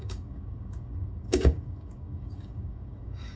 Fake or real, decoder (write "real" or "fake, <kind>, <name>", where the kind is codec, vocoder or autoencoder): fake, codec, DAC